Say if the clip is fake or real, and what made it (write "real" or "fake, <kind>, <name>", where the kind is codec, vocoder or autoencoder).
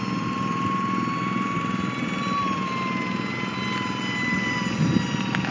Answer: real